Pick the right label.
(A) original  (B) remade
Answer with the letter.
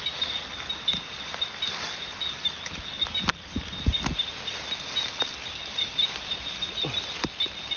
A